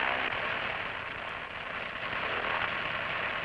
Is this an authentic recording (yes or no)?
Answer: yes